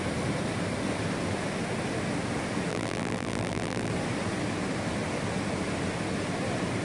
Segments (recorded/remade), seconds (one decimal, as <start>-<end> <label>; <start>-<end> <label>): 0.0-2.7 recorded; 2.7-3.9 remade; 3.9-6.8 recorded